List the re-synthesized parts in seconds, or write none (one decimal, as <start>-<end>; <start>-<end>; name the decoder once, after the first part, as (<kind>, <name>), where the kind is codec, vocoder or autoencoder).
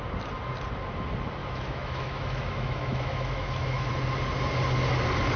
1.4-3.9 (autoencoder, DAC-VAE)